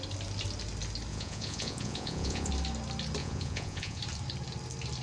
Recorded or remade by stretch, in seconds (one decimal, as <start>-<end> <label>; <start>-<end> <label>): 0.0-1.1 recorded; 1.1-2.5 remade; 2.5-3.2 recorded; 3.2-4.0 remade; 4.0-5.0 recorded

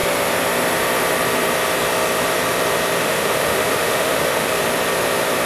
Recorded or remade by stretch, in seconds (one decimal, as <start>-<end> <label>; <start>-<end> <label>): 0.0-3.0 recorded; 3.0-4.5 remade; 4.5-5.5 recorded

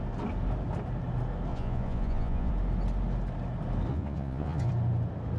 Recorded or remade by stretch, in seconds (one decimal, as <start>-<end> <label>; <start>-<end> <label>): 0.0-1.5 recorded; 1.5-2.5 remade; 2.5-3.9 recorded; 3.9-4.7 remade; 4.7-5.4 recorded

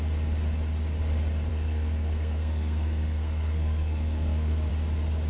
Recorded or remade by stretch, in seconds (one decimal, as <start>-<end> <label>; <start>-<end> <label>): 0.0-1.5 recorded; 1.5-4.7 remade; 4.7-5.3 recorded